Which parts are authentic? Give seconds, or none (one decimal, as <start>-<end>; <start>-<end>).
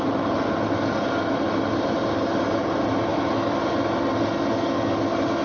0.0-3.1; 3.6-5.4